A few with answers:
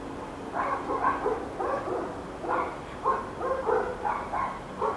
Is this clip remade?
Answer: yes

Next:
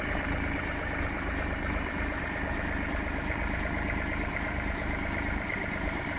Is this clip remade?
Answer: yes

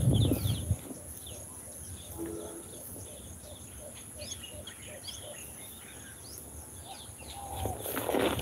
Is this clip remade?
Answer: no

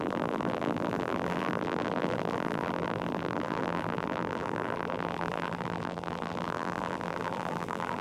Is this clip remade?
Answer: yes